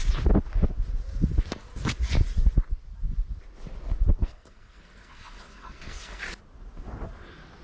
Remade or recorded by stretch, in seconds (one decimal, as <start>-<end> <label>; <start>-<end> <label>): 0.0-4.2 recorded; 4.2-6.2 remade; 6.2-7.6 recorded